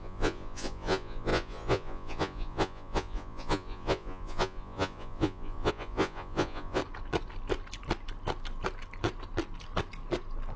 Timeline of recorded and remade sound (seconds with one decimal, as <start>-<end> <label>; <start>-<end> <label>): 0.0-6.8 remade; 6.8-10.6 recorded